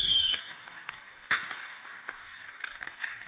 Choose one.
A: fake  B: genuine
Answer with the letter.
A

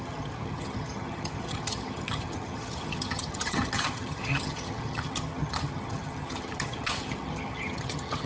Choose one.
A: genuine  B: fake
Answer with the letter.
B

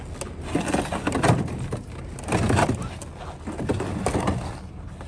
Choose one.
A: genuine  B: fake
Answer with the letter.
A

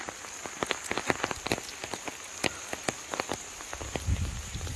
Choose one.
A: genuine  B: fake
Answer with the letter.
A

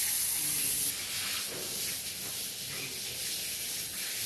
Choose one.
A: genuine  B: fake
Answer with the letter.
A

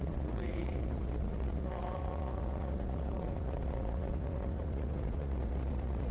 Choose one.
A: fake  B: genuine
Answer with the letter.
A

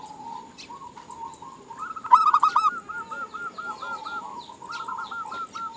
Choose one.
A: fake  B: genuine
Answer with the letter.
B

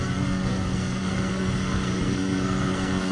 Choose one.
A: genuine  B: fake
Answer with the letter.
B